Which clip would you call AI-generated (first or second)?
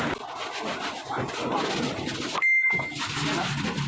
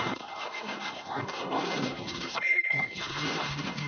second